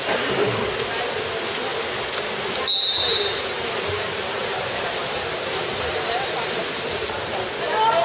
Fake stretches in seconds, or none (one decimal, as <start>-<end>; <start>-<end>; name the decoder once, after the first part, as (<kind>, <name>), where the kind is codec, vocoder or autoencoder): 4.4-7.3 (vocoder, BigVGAN v2)